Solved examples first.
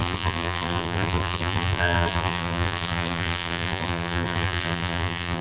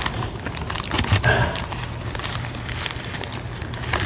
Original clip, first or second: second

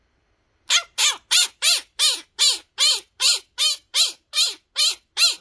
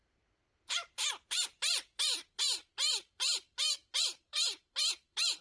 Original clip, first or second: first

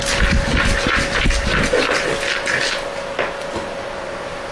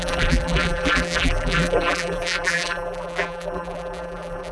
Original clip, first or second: first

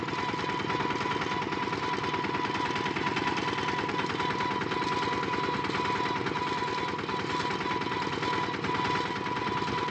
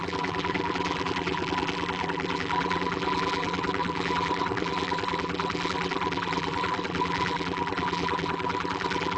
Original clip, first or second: first